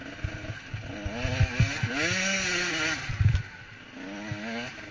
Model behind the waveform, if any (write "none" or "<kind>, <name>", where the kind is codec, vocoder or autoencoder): none